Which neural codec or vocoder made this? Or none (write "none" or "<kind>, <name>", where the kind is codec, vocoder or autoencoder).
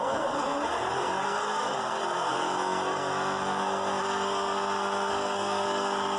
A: codec, SNAC